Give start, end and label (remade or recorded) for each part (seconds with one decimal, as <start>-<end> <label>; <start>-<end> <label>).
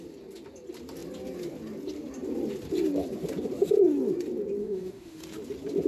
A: 0.0-4.6 recorded; 4.6-5.2 remade; 5.2-5.9 recorded